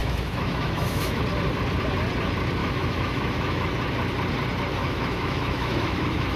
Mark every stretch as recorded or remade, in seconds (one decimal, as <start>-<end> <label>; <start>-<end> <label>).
0.0-1.2 remade; 1.2-2.6 recorded; 2.6-3.7 remade; 3.7-4.8 recorded; 4.8-6.4 remade